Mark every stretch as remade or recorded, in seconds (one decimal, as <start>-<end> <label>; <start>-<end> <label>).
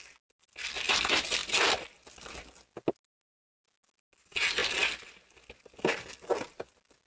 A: 0.0-7.1 recorded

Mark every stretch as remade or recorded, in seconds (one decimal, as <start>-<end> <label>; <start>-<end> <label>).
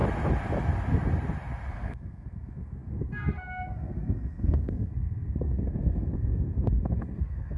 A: 0.0-1.7 recorded; 1.7-7.6 remade